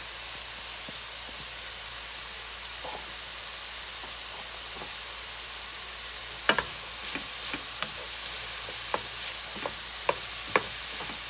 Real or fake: real